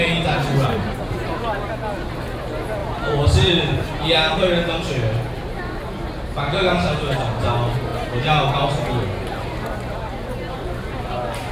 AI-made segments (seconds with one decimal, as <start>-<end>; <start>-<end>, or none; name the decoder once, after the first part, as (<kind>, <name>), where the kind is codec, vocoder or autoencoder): none